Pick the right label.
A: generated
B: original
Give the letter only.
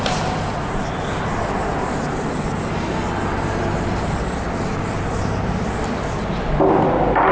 B